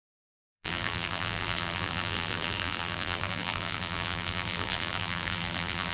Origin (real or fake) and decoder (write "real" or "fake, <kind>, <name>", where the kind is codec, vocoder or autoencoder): fake, vocoder, BigVGAN v2